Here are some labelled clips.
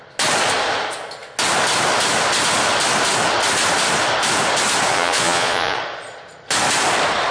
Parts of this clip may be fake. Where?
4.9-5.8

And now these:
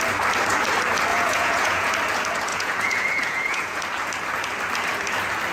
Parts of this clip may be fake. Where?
1.1-1.9; 2.5-3.8